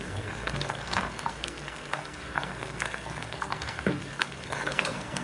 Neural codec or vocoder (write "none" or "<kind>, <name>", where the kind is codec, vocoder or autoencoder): codec, SNAC